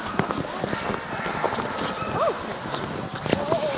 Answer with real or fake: real